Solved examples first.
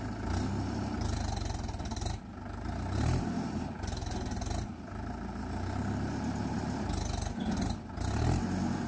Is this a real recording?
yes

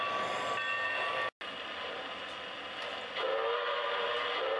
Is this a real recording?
yes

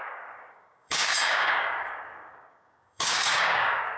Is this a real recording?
no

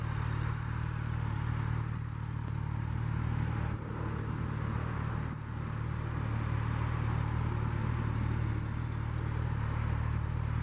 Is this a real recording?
yes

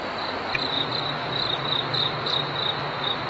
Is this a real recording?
yes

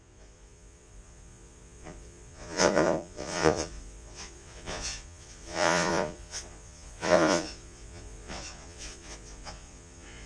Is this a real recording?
no